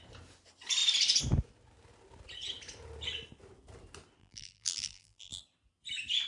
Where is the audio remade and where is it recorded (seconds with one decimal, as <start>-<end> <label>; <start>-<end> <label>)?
0.0-4.2 recorded; 4.2-5.4 remade; 5.4-6.3 recorded